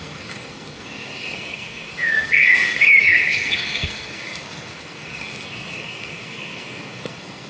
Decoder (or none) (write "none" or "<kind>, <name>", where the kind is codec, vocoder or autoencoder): codec, SNAC